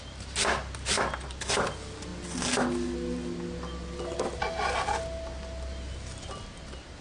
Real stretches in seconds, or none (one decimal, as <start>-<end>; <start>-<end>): 0.0-7.0